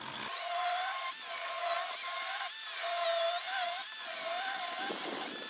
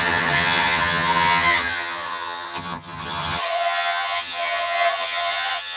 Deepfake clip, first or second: second